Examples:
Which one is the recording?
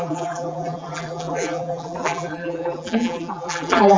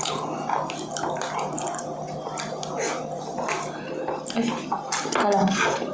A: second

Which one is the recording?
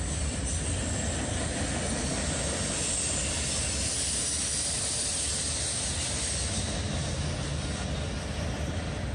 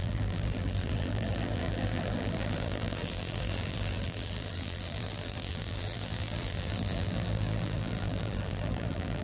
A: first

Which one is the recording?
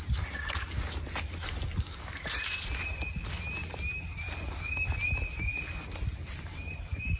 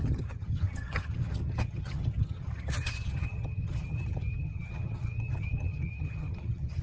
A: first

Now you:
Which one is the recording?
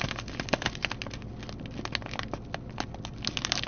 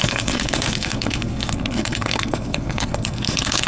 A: first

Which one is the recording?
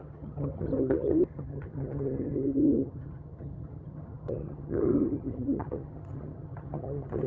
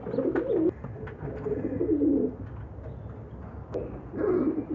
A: second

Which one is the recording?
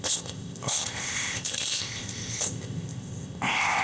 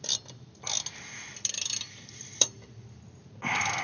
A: second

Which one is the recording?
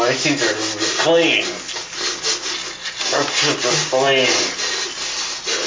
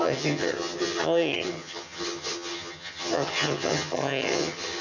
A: first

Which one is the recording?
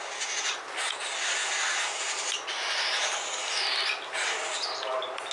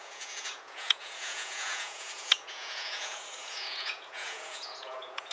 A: first